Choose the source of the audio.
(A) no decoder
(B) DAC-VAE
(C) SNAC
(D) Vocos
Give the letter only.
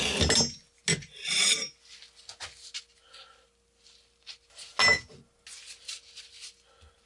A